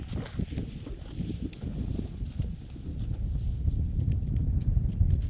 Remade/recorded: recorded